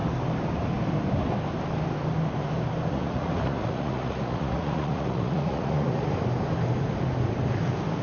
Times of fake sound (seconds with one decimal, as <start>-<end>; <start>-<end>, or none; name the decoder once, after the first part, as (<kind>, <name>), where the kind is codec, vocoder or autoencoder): 2.9-6.1 (vocoder, Vocos)